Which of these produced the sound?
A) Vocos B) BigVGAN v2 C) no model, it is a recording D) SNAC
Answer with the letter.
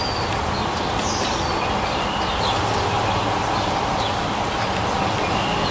C